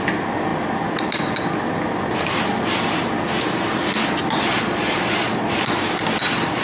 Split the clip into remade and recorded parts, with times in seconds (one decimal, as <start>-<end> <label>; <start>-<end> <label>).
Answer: 0.0-4.5 recorded; 4.5-5.5 remade; 5.5-6.6 recorded